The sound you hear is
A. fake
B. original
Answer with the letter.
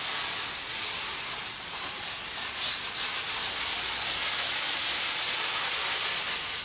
B